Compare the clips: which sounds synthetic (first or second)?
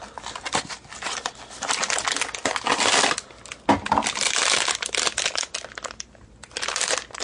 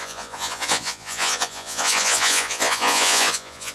second